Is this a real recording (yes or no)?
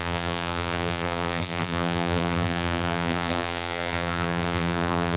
no